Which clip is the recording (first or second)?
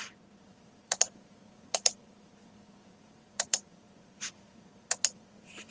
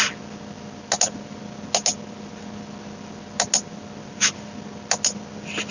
second